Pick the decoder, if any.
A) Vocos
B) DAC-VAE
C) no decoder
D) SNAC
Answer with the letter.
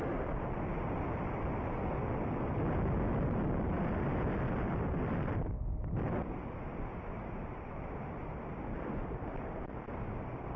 C